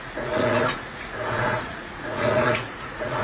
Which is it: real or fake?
fake